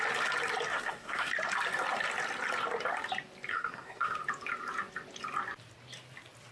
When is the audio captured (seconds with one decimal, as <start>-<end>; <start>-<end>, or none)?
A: 0.0-0.7; 1.3-3.5; 4.2-6.5